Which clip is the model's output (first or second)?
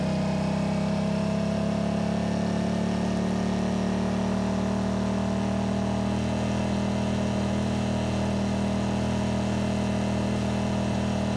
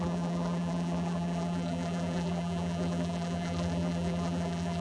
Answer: second